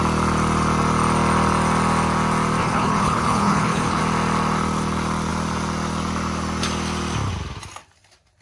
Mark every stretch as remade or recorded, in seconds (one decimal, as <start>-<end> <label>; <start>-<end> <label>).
0.0-2.6 recorded; 2.6-4.0 remade; 4.0-8.4 recorded